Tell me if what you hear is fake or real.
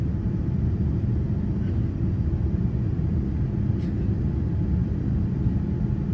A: real